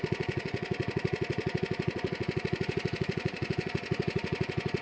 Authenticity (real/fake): fake